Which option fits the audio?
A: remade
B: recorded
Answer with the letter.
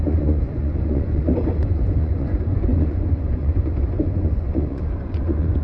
A